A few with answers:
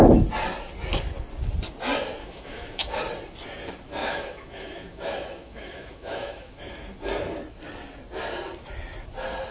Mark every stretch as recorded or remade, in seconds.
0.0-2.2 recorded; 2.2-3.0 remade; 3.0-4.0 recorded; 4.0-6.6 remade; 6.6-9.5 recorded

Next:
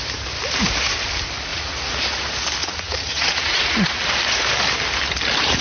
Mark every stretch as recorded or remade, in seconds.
0.0-1.5 recorded; 1.5-2.0 remade; 2.0-2.6 recorded; 2.6-4.0 remade; 4.0-5.6 recorded

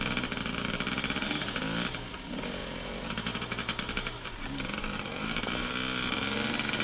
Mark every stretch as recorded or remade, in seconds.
0.0-2.6 recorded; 2.6-5.7 remade; 5.7-6.8 recorded

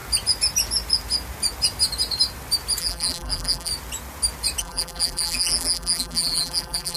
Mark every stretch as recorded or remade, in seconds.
0.0-2.8 recorded; 2.8-3.7 remade; 3.7-4.6 recorded; 4.6-7.0 remade

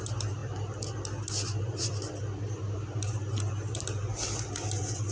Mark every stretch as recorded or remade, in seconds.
0.0-5.1 recorded

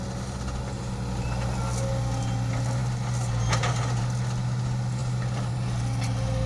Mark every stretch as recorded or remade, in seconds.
0.0-6.5 recorded